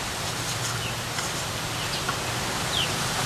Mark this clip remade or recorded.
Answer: recorded